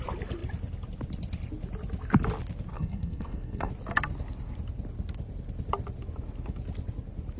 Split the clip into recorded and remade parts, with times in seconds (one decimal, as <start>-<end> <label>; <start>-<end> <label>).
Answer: 0.0-2.7 recorded; 2.7-3.7 remade; 3.7-7.4 recorded

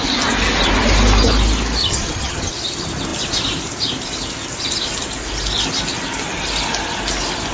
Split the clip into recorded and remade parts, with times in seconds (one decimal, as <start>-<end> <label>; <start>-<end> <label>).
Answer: 0.0-1.8 recorded; 1.8-2.5 remade; 2.5-7.5 recorded

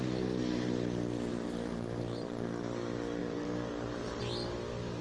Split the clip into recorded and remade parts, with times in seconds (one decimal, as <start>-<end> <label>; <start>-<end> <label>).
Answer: 0.0-1.3 recorded; 1.3-2.5 remade; 2.5-3.2 recorded; 3.2-4.2 remade; 4.2-5.0 recorded

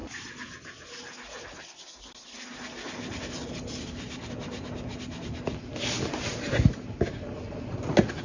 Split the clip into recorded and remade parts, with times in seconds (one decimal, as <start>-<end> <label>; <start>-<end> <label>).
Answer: 0.0-8.2 recorded

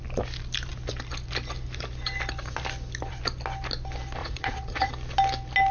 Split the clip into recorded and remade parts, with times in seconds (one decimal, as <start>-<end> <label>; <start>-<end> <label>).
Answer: 0.0-4.2 recorded; 4.2-4.9 remade; 4.9-5.7 recorded

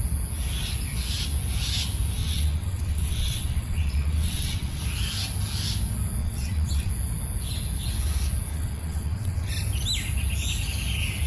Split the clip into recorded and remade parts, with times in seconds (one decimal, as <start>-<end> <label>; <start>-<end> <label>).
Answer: 0.0-2.2 recorded; 2.2-4.8 remade; 4.8-6.2 recorded; 6.2-6.9 remade; 6.9-8.5 recorded; 8.5-9.5 remade; 9.5-11.3 recorded